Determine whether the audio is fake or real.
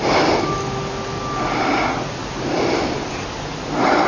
real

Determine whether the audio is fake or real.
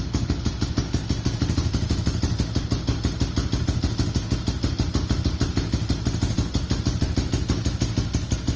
real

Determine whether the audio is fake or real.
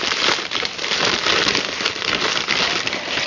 real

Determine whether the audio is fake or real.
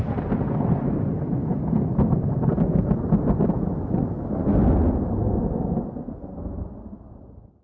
real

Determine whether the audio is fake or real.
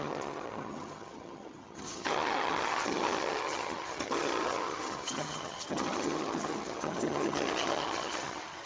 fake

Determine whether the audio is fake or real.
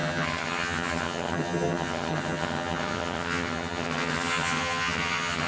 fake